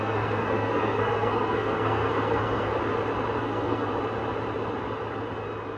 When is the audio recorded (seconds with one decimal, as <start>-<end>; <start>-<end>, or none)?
2.7-3.4; 3.9-5.8